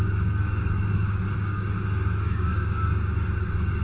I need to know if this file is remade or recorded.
remade